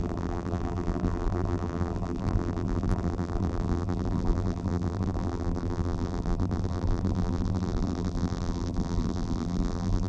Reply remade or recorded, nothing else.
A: remade